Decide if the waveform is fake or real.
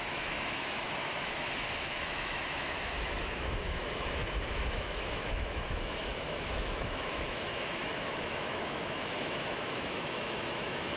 fake